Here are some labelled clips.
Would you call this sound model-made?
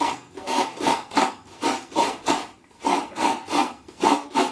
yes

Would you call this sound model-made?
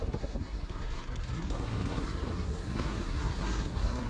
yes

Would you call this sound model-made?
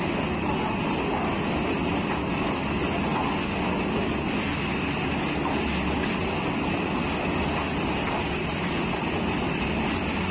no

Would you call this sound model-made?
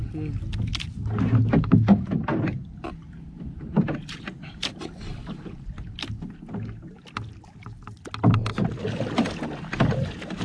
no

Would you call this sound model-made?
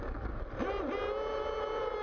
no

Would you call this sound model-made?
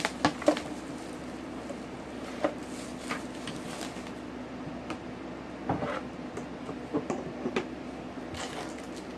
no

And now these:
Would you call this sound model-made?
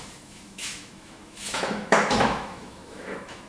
yes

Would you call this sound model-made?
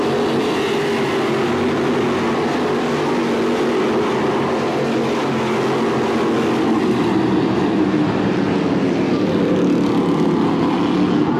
no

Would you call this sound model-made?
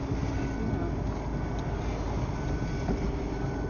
no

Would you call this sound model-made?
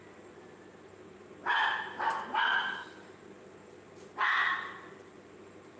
no